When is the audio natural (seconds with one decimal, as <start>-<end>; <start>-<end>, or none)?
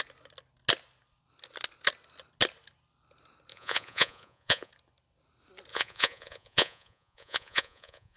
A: 0.0-3.5; 4.7-5.7